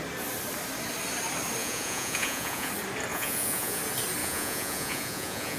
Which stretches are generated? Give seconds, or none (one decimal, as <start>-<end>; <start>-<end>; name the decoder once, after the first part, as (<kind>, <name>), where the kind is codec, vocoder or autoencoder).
1.6-2.7 (vocoder, Vocos); 3.1-3.8; 4.2-5.6